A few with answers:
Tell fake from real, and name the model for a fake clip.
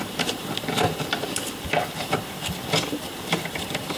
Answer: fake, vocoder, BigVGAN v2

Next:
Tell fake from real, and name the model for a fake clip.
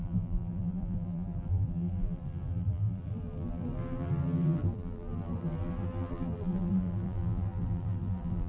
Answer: fake, vocoder, BigVGAN v2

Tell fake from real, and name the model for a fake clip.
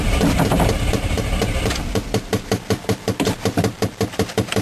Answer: fake, vocoder, BigVGAN v2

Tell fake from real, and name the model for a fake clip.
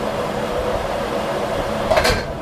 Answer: fake, vocoder, BigVGAN v2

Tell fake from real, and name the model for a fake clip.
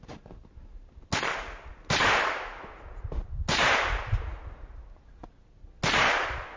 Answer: real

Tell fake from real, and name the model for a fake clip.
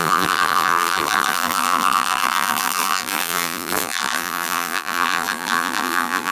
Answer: fake, vocoder, BigVGAN v2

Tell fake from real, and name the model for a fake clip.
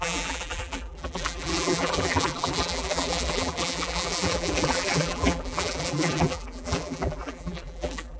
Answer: fake, vocoder, BigVGAN v2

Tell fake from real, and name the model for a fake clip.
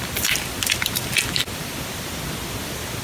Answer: fake, vocoder, BigVGAN v2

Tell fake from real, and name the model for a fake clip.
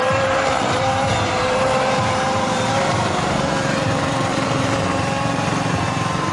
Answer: fake, vocoder, BigVGAN v2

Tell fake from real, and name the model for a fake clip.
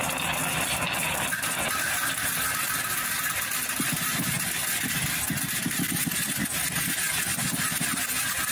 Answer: real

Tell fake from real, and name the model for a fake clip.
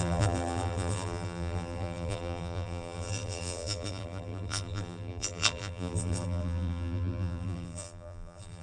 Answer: fake, vocoder, BigVGAN v2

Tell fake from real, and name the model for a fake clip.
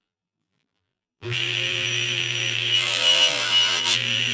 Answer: fake, vocoder, BigVGAN v2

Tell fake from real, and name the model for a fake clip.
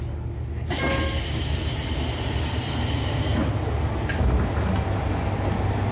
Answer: real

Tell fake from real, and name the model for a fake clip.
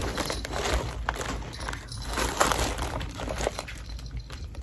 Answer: fake, vocoder, BigVGAN v2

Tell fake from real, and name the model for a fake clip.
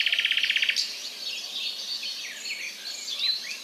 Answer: real